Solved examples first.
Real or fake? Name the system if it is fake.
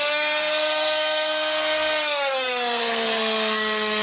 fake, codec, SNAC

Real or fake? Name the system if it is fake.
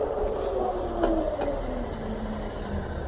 real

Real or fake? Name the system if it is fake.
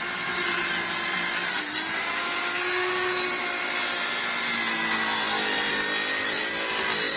real